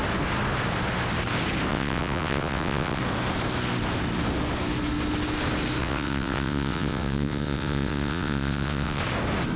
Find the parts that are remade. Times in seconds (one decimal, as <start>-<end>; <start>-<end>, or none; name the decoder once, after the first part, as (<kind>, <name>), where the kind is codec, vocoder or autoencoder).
1.7-3.0 (vocoder, WaveNeXt); 5.8-9.0